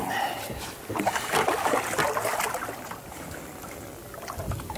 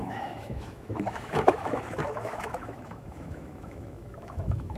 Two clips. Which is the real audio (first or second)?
first